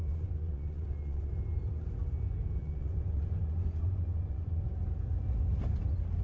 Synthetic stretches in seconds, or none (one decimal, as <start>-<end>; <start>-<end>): 0.0-1.3; 2.6-4.6